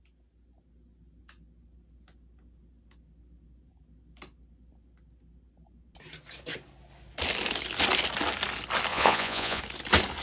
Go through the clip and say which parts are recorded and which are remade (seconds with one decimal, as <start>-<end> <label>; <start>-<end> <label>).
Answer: 0.0-8.9 recorded; 8.9-9.6 remade; 9.6-10.2 recorded